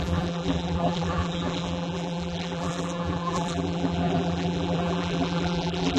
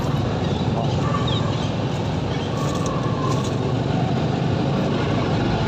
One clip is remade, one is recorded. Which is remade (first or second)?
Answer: first